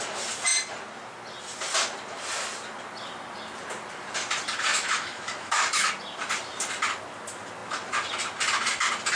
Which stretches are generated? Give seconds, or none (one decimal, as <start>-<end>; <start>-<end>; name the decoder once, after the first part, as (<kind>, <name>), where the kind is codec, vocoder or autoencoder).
4.7-5.9 (autoencoder, DAC-VAE)